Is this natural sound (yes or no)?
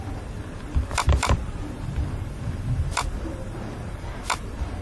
no